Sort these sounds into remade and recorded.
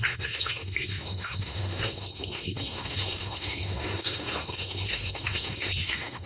remade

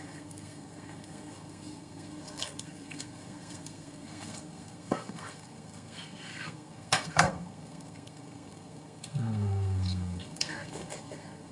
remade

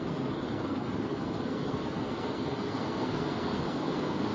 remade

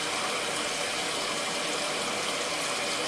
recorded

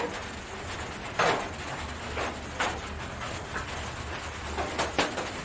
recorded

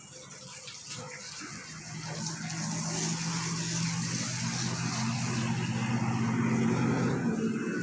recorded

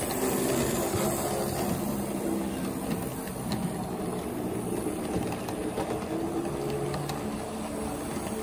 recorded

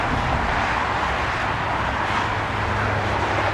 recorded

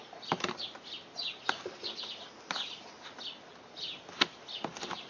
recorded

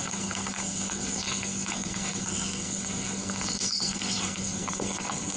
remade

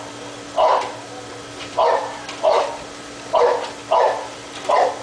recorded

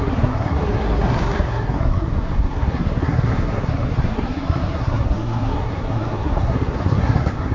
remade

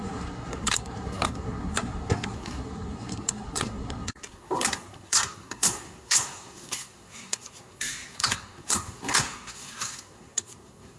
remade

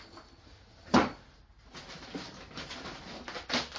recorded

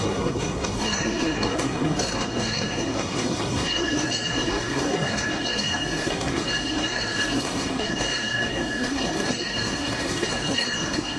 remade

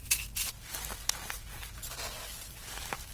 recorded